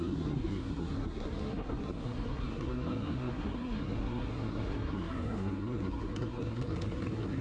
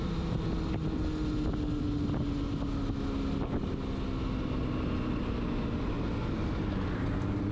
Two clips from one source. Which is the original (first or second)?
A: second